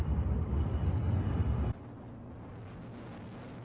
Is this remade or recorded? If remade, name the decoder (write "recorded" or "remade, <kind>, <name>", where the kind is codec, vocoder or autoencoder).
recorded